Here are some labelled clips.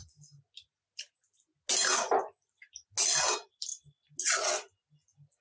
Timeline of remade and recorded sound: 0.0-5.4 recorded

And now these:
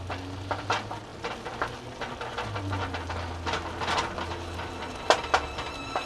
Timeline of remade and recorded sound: 0.0-6.1 recorded

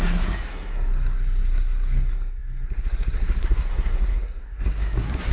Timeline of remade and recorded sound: 0.0-5.3 remade

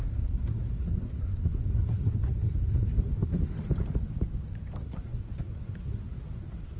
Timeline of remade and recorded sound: 0.0-3.4 remade; 3.4-4.8 recorded; 4.8-6.8 remade

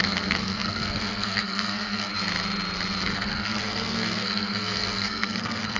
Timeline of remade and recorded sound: 0.0-2.1 remade; 2.1-3.0 recorded; 3.0-5.8 remade

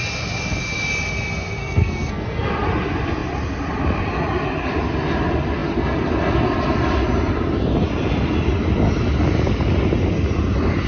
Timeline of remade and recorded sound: 0.0-1.6 recorded; 1.6-2.5 remade; 2.5-10.9 recorded